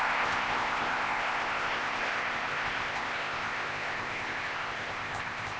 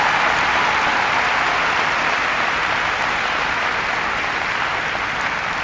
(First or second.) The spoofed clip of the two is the first